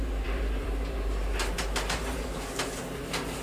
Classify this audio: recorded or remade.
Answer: remade